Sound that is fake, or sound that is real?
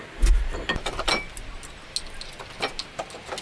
real